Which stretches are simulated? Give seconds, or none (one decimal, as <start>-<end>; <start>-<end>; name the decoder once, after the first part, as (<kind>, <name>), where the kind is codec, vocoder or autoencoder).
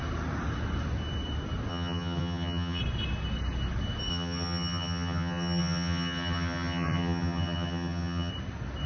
1.7-2.8 (vocoder, HiFi-GAN); 4.1-8.3